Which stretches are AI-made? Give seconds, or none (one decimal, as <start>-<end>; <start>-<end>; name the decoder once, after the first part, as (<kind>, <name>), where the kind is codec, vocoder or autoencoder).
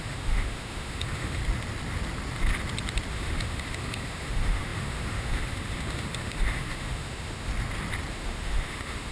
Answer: 0.0-1.4 (autoencoder, DAC-VAE); 3.1-7.5; 8.1-9.1